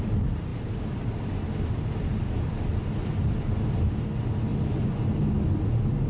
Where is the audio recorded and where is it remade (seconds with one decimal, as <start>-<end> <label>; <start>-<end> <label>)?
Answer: 0.0-6.1 recorded